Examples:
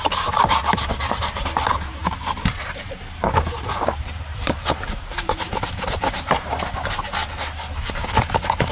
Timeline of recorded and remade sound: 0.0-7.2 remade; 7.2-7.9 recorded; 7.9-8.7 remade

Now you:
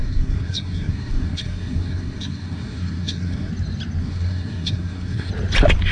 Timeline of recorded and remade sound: 0.0-3.5 remade; 3.5-4.0 recorded; 4.0-5.3 remade; 5.3-5.9 recorded

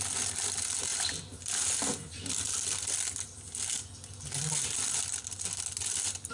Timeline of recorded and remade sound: 0.0-6.3 recorded

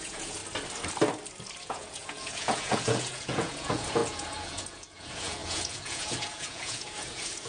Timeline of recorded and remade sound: 0.0-0.4 remade; 0.4-1.6 recorded; 1.6-7.5 remade

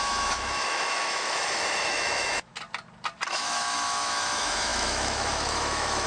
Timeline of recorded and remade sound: 0.0-2.5 remade; 2.5-3.3 recorded; 3.3-6.1 remade